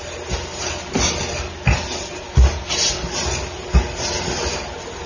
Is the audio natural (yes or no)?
yes